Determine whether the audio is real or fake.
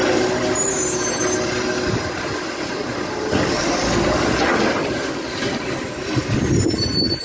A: real